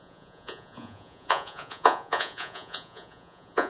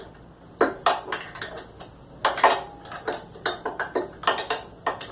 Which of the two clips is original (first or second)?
second